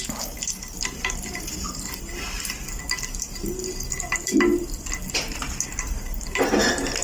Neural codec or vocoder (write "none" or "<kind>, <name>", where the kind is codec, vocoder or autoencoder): none